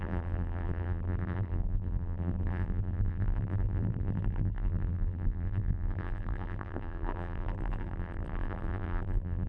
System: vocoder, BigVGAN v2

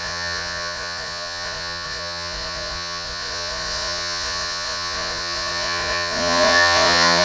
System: vocoder, Vocos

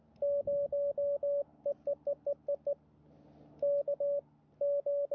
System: none